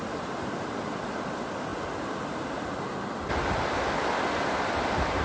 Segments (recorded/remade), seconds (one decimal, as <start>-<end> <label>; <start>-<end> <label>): 0.0-5.2 recorded